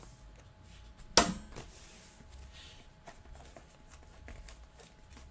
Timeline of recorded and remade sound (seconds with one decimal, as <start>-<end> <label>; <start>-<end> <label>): 0.0-5.3 recorded